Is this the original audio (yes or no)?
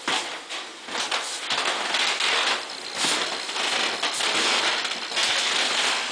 yes